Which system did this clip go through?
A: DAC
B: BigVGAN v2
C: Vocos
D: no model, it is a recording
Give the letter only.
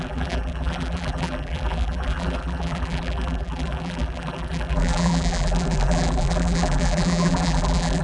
B